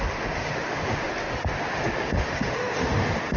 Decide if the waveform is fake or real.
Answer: fake